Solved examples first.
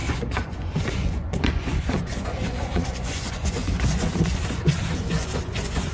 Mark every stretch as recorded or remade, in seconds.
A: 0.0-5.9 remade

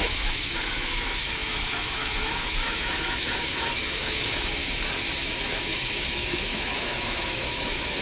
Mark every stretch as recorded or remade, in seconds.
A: 0.0-4.6 remade; 4.6-5.2 recorded; 5.2-8.0 remade

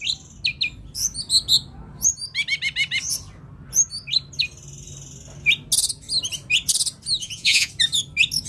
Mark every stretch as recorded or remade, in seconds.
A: 0.0-7.2 recorded; 7.2-7.7 remade; 7.7-8.5 recorded

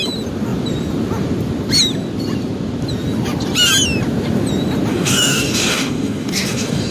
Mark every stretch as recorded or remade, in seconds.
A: 0.0-4.9 recorded; 4.9-6.9 remade

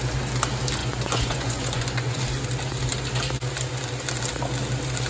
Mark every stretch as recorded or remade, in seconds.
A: 0.0-0.8 recorded; 0.8-2.2 remade; 2.2-5.1 recorded